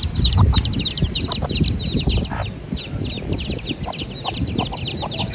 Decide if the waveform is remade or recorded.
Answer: recorded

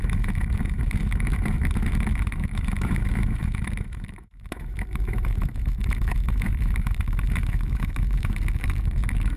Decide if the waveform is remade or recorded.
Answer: remade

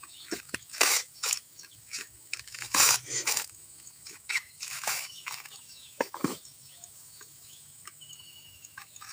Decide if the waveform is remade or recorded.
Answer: remade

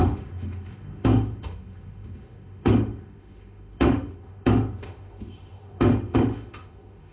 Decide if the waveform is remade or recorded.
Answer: remade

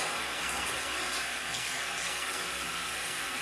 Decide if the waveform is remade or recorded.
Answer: remade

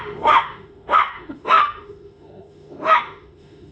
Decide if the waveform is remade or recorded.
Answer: remade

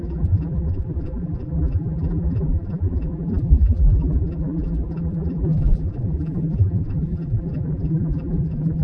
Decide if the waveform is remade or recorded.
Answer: remade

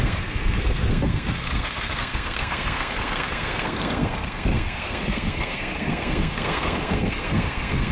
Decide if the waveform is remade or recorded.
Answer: remade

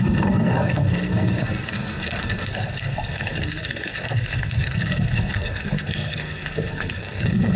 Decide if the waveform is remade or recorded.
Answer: remade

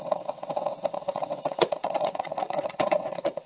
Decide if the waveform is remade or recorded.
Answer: remade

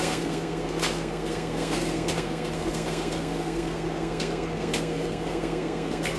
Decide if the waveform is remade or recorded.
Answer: remade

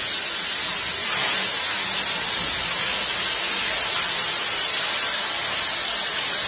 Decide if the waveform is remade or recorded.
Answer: recorded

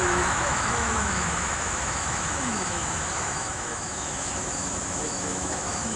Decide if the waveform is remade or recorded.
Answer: remade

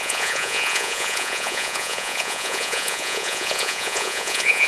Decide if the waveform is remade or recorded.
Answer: remade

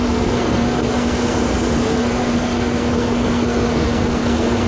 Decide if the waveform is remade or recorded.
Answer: remade